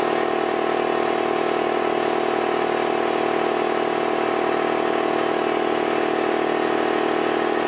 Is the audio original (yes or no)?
yes